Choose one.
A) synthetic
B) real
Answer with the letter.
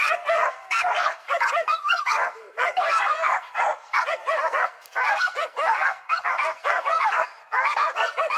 A